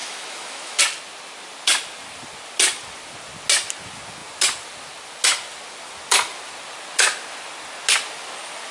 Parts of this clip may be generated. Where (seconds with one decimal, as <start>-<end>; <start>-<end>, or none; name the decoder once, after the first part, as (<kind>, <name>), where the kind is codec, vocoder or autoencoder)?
0.0-0.8 (autoencoder, DAC-VAE)